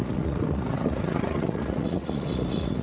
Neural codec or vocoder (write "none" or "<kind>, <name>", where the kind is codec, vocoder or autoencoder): vocoder, Vocos